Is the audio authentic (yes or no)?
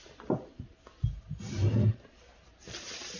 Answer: yes